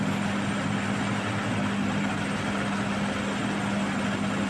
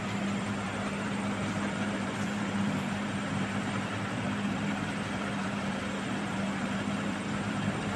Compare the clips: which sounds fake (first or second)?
second